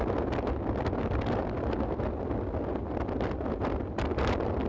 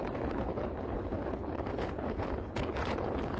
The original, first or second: first